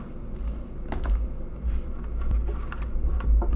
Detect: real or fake real